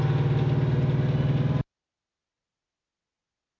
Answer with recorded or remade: recorded